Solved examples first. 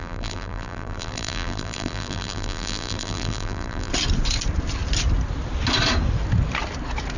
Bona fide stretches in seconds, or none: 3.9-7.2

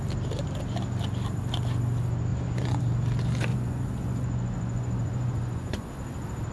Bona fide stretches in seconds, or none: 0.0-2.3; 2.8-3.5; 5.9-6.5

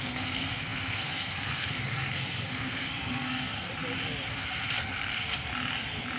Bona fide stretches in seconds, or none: 3.7-4.3; 5.5-6.2